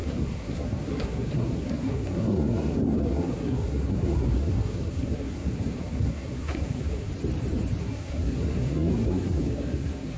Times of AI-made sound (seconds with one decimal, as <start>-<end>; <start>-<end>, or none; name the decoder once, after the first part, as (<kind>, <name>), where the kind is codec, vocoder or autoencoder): 0.0-7.1 (codec, SNAC); 7.8-10.2